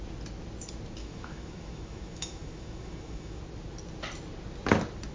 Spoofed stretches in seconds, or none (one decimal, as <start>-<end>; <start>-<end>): 1.0-3.4